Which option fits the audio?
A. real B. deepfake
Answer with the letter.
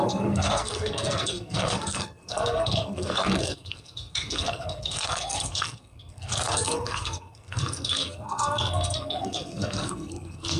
B